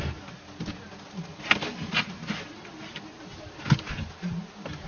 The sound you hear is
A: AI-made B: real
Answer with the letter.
B